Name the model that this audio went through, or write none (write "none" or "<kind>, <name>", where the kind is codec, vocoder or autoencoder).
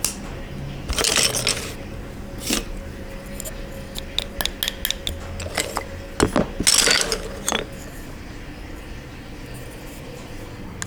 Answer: none